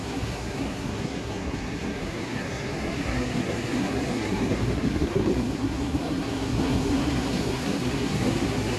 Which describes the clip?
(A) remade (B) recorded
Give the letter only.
A